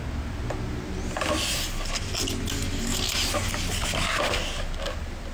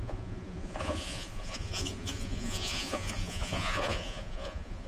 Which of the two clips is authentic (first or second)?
first